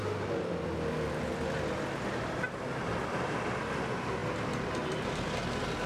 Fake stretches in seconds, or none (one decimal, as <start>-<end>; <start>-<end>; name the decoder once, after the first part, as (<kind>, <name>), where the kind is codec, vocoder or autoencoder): none

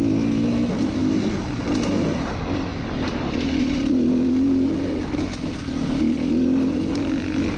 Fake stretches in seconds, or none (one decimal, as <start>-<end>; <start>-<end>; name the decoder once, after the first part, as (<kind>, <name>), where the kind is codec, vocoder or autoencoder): none

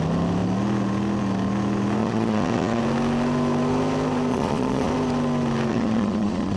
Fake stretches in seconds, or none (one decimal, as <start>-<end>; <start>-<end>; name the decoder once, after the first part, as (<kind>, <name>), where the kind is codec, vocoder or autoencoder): 2.0-2.8 (vocoder, Vocos); 4.3-4.9; 5.7-6.6

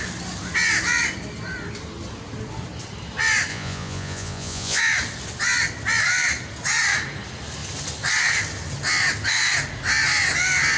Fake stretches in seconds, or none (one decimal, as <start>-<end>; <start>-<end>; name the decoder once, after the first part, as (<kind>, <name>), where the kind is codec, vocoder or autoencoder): 3.5-4.8 (vocoder, Vocos)

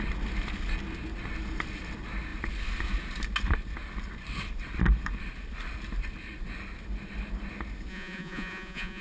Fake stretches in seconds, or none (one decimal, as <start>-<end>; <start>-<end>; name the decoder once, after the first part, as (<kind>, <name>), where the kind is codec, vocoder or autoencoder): 7.9-9.0 (vocoder, Vocos)

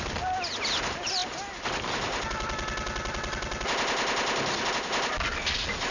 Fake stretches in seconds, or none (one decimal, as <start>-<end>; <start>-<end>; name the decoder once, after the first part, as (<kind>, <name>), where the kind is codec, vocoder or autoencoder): none